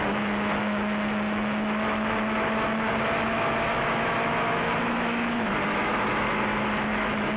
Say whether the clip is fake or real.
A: fake